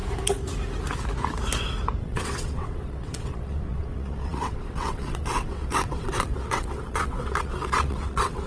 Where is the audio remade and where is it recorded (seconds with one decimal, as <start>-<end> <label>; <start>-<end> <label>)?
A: 0.0-2.0 recorded; 2.0-8.5 remade